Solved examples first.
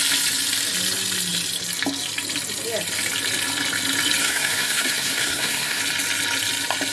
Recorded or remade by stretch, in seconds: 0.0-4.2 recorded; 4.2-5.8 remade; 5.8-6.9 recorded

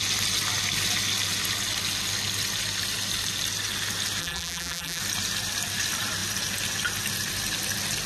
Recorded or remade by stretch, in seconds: 0.0-4.2 recorded; 4.2-5.0 remade; 5.0-8.1 recorded

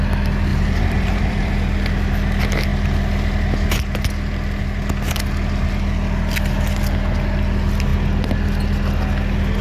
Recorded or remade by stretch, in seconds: 0.0-0.5 recorded; 0.5-1.5 remade; 1.5-9.6 recorded

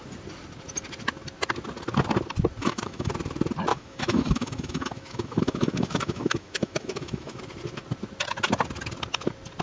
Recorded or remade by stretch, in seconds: 0.0-2.6 recorded; 2.6-3.1 remade; 3.1-3.7 recorded; 3.7-7.4 remade; 7.4-9.6 recorded

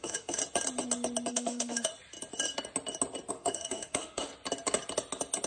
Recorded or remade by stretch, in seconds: 0.0-0.4 remade; 0.4-1.3 recorded; 1.3-1.9 remade; 1.9-3.3 recorded; 3.3-4.3 remade; 4.3-5.5 recorded

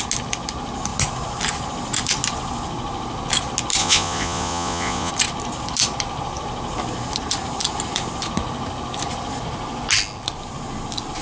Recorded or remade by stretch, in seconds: 0.0-3.8 recorded; 3.8-5.1 remade; 5.1-11.2 recorded

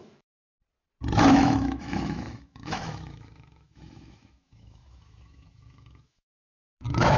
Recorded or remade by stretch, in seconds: 0.0-0.5 remade; 0.5-1.3 recorded; 1.3-7.2 remade